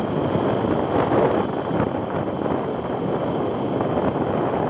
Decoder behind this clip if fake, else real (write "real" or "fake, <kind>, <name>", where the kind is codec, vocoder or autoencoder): real